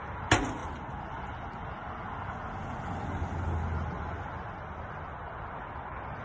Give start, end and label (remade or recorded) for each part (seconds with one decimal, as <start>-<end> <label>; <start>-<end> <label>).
0.0-6.2 recorded